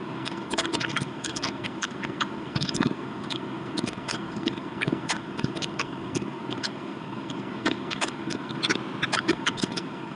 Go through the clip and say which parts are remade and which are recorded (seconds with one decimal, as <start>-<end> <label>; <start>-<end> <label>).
0.0-8.6 remade; 8.6-9.2 recorded; 9.2-10.2 remade

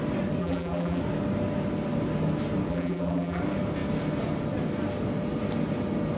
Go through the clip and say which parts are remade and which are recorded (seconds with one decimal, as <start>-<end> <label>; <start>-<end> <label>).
0.0-0.4 recorded; 0.4-1.0 remade; 1.0-2.7 recorded; 2.7-3.4 remade; 3.4-6.2 recorded

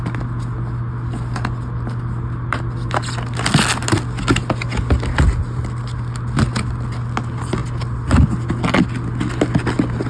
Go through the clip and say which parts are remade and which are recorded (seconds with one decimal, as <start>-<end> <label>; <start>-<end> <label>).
0.0-10.1 recorded

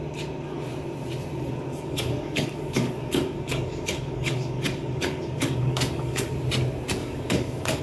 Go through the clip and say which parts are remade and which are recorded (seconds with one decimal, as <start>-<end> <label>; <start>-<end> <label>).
0.0-1.7 recorded; 1.7-6.3 remade; 6.3-7.0 recorded; 7.0-7.8 remade

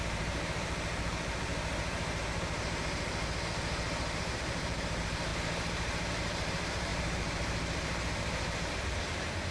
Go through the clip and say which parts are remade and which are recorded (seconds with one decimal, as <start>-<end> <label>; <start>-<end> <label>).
0.0-1.5 remade; 1.5-4.2 recorded; 4.2-5.3 remade; 5.3-6.1 recorded; 6.1-9.5 remade

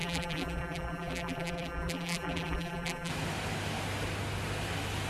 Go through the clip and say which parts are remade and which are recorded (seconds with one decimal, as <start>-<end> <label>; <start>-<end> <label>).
0.0-3.1 remade; 3.1-5.1 recorded